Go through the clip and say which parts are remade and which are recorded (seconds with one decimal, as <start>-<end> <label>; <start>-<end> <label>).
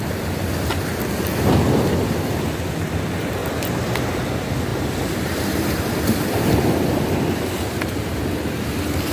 0.0-4.7 recorded; 4.7-7.1 remade; 7.1-9.1 recorded